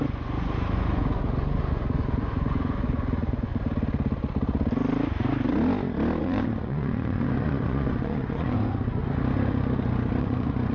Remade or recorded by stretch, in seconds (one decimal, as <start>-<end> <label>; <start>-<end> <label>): 0.0-3.5 remade; 3.5-6.2 recorded; 6.2-9.0 remade; 9.0-10.2 recorded; 10.2-10.7 remade